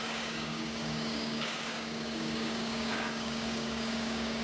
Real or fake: fake